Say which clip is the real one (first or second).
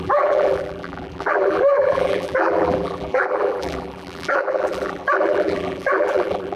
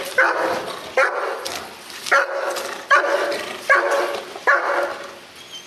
second